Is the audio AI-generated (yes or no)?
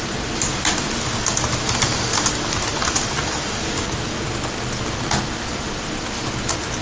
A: no